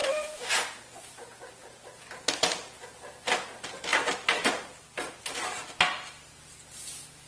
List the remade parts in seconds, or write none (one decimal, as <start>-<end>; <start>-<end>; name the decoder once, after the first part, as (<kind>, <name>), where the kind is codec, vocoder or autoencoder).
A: 0.0-0.5 (autoencoder, DAC-VAE)